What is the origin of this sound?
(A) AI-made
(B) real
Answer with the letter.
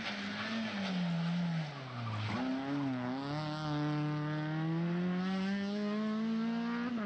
B